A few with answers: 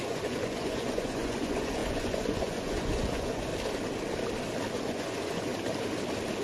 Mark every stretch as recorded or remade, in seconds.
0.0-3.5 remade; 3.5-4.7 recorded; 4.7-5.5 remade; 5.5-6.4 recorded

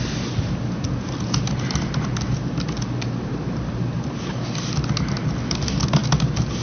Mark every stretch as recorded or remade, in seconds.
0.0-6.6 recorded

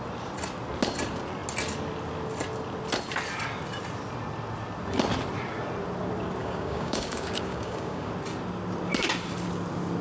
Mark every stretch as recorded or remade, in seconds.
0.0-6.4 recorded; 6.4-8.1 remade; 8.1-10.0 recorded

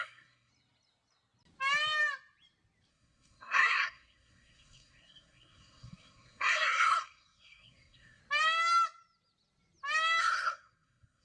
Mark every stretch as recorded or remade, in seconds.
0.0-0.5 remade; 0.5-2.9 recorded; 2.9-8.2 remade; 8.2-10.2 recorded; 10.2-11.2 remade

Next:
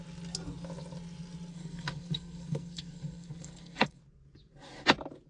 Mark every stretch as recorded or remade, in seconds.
0.0-1.5 recorded; 1.5-4.0 remade; 4.0-5.3 recorded